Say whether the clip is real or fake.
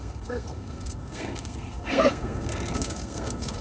fake